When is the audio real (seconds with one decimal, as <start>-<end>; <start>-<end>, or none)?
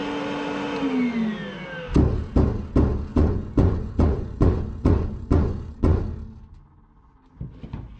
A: 0.0-3.1; 6.0-8.0